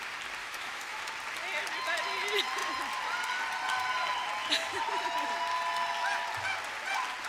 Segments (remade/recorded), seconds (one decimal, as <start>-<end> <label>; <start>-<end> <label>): 0.0-0.4 recorded; 0.4-1.0 remade; 1.0-7.3 recorded